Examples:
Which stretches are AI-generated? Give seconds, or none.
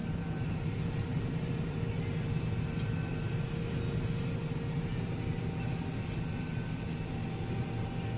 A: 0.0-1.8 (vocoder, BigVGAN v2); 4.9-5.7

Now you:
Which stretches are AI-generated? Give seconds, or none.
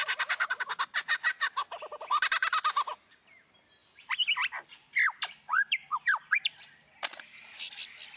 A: 2.4-3.3 (vocoder, BigVGAN v2); 3.8-7.2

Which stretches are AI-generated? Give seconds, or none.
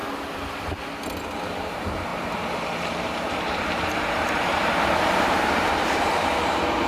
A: 1.4-6.9 (vocoder, BigVGAN v2)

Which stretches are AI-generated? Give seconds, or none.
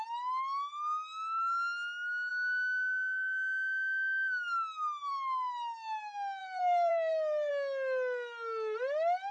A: 6.4-7.5 (vocoder, BigVGAN v2)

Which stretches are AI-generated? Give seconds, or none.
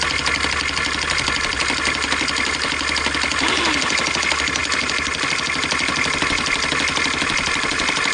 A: none